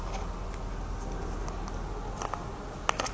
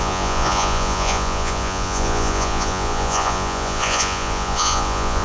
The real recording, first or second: first